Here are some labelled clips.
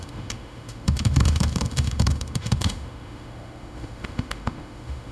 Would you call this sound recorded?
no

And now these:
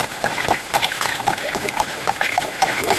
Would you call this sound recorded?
no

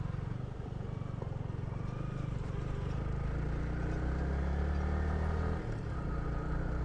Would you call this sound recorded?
yes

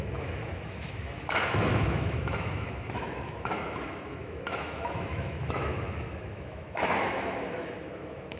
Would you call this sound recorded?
no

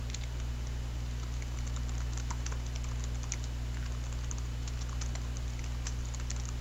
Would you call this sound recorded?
yes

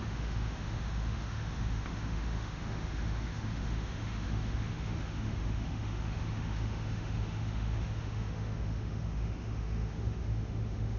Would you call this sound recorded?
no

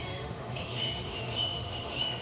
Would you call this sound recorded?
no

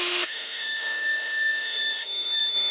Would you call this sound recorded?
no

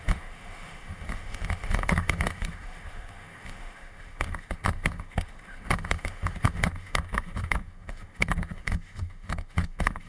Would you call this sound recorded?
no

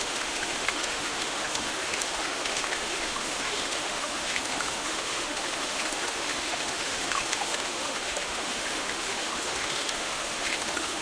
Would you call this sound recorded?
no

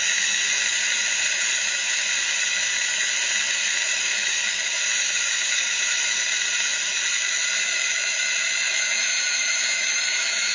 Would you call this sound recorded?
no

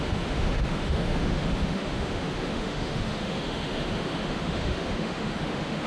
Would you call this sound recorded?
no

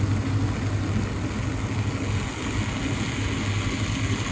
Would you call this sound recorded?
yes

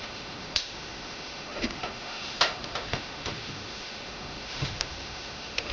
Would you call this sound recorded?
no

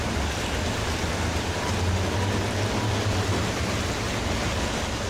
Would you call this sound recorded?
yes